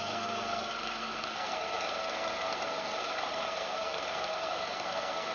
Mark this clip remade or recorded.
remade